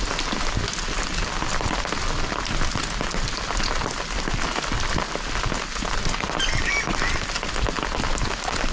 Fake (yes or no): no